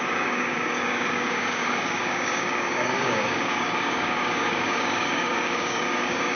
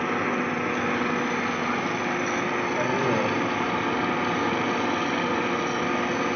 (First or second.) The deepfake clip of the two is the first